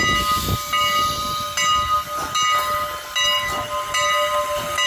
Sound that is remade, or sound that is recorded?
recorded